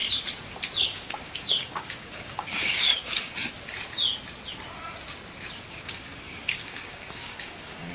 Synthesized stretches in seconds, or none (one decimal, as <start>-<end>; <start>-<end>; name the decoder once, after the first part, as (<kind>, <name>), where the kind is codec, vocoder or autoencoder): 0.8-3.0 (codec, DAC); 5.7-7.9